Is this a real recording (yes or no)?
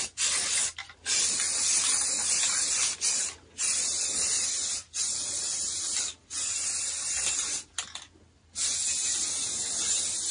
yes